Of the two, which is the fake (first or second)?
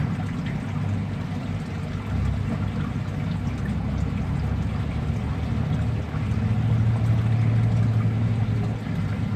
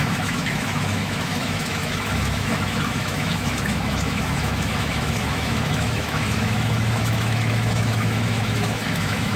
second